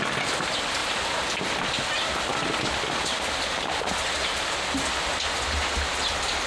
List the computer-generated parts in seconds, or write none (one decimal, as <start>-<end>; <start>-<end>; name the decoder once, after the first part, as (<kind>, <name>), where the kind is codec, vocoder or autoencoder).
0.8-1.5 (vocoder, BigVGAN v2)